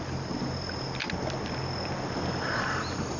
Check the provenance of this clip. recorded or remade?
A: recorded